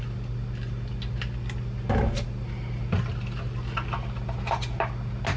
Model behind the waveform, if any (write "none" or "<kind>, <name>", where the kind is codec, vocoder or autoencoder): none